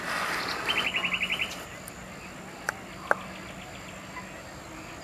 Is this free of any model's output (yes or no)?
yes